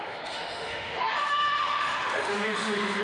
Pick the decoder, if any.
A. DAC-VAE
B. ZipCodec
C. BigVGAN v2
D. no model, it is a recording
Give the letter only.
A